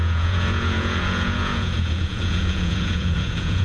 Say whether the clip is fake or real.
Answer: fake